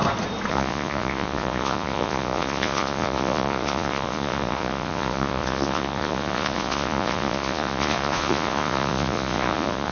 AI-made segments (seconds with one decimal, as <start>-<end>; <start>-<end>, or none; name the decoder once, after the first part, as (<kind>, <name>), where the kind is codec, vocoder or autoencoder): 0.5-9.9 (vocoder, Vocos)